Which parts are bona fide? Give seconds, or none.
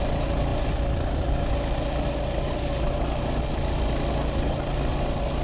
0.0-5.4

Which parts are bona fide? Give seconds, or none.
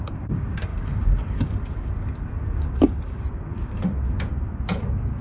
4.3-4.8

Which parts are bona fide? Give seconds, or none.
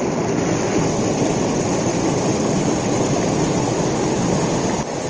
0.0-5.1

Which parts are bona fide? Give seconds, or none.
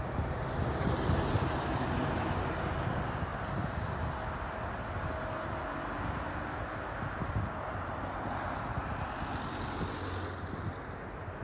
0.0-11.4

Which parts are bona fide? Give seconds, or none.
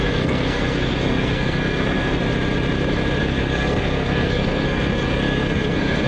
2.2-3.2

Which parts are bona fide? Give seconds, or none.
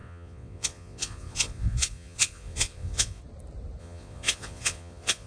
3.2-3.8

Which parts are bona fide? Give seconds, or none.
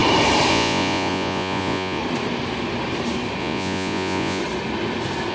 0.0-0.5; 2.0-3.4; 4.4-5.3